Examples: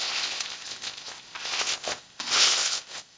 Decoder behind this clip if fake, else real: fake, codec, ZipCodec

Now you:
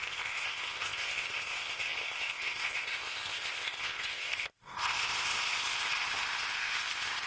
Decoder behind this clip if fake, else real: fake, codec, ZipCodec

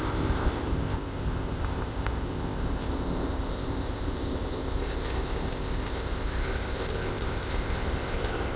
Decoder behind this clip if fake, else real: fake, codec, ZipCodec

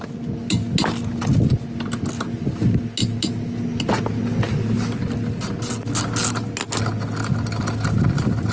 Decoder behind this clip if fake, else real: real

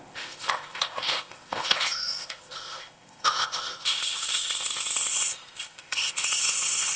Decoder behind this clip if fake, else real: fake, codec, ZipCodec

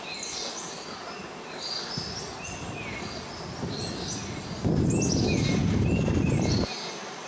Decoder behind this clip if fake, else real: real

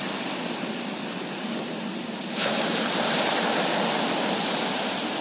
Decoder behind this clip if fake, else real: real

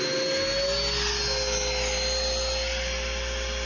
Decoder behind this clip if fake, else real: real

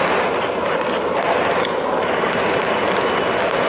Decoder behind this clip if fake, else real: real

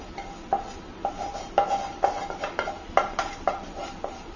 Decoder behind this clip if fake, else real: real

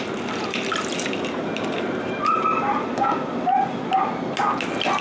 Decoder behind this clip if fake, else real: real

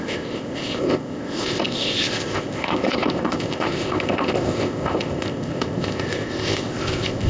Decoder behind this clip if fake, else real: fake, codec, ZipCodec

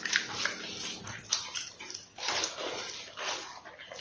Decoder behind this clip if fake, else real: real